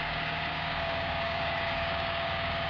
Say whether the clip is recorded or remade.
remade